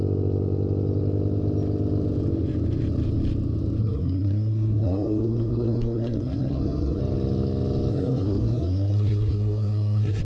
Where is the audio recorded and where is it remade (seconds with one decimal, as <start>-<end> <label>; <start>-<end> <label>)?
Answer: 0.0-3.8 recorded; 3.8-7.0 remade; 7.0-7.9 recorded; 7.9-10.2 remade